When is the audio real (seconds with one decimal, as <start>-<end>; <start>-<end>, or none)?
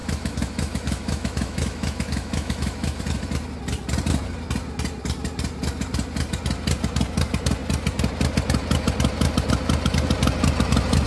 3.0-11.1